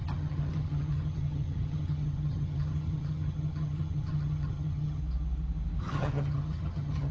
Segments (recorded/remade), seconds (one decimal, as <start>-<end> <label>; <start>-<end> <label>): 0.0-5.0 remade; 5.0-5.8 recorded; 5.8-7.1 remade